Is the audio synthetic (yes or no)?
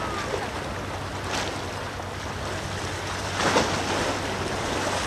no